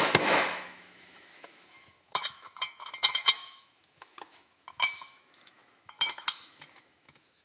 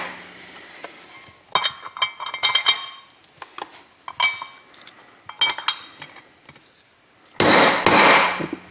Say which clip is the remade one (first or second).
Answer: first